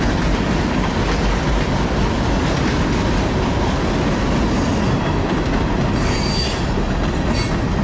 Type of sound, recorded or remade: recorded